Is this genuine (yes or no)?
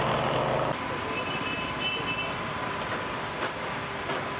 yes